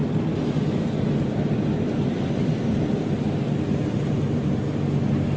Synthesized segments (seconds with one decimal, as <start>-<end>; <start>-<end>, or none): none